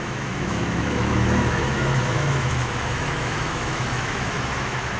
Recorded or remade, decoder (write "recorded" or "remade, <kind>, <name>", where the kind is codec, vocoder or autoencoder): remade, autoencoder, DAC-VAE